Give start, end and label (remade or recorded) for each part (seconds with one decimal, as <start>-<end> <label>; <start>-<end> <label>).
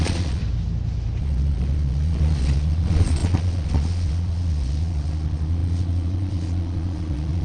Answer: 0.0-0.4 remade; 0.4-1.2 recorded; 1.2-7.4 remade